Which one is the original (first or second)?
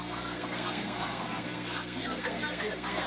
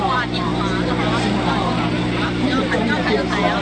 second